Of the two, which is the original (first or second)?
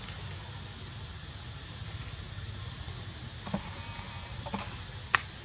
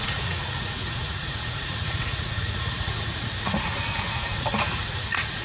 first